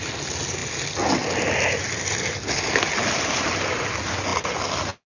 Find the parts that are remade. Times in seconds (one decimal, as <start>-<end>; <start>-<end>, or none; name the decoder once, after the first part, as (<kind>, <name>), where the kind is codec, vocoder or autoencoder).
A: none